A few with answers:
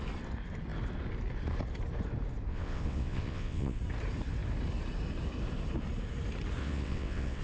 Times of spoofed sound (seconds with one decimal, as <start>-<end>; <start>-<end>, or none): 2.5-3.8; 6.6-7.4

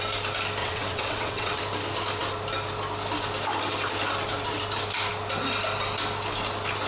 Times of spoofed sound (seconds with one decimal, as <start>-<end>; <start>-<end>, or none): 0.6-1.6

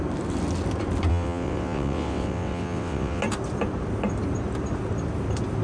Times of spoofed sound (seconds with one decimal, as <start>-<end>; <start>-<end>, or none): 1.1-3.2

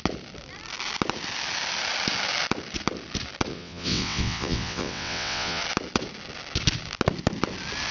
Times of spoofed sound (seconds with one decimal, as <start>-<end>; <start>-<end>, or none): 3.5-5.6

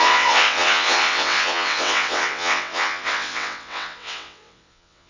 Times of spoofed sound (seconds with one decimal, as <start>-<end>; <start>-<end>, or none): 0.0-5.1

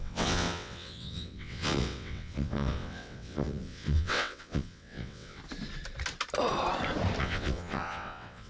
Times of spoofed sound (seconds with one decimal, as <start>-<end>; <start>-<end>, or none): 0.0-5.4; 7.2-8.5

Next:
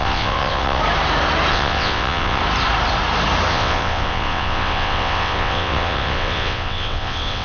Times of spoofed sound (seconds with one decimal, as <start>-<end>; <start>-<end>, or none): 0.0-0.8; 1.5-2.4; 3.5-7.4

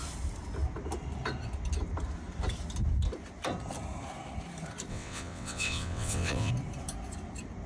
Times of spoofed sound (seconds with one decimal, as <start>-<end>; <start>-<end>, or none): 4.9-6.5